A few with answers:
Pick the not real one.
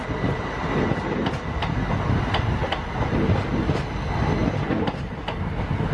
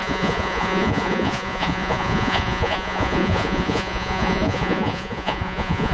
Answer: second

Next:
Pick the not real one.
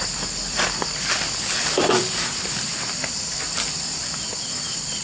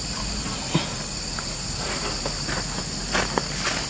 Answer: first